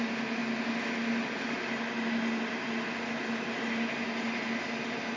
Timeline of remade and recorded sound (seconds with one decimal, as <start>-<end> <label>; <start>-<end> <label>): 0.0-5.2 recorded